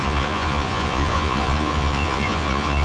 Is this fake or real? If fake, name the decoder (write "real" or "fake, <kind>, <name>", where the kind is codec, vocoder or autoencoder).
fake, vocoder, Vocos